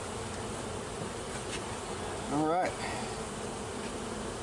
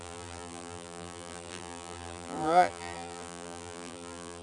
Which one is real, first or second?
first